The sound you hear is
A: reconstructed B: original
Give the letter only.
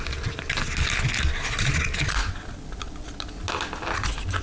B